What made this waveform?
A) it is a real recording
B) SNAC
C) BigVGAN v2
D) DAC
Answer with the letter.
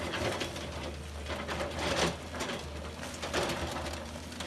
A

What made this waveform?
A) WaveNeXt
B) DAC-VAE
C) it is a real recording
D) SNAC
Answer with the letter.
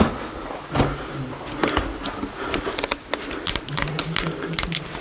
C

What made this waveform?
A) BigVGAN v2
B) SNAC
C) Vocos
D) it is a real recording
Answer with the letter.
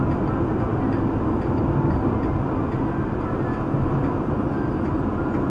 D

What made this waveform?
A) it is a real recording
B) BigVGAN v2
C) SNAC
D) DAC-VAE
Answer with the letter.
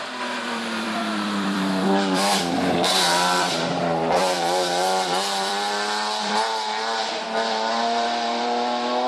B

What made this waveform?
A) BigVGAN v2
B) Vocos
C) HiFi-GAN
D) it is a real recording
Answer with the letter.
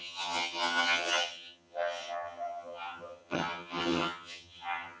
C